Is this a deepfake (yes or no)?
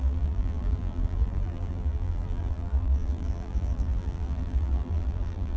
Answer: yes